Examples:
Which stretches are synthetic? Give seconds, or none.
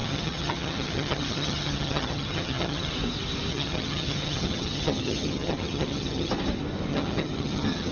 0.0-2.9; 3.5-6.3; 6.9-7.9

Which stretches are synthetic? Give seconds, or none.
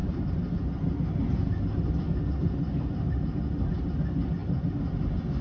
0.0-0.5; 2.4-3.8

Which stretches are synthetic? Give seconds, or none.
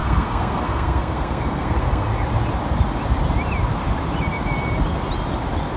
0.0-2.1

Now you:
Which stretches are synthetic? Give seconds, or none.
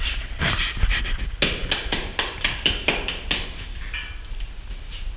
none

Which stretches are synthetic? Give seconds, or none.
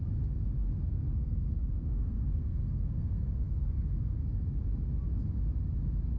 0.7-4.4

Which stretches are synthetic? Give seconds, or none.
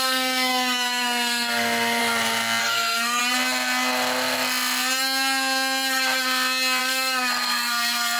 0.0-2.0; 2.6-3.2; 6.8-8.2